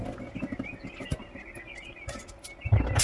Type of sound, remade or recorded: recorded